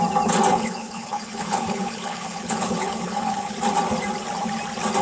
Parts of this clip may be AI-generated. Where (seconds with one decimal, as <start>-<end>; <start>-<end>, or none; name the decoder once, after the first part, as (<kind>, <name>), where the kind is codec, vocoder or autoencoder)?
0.5-3.5 (codec, HILCodec)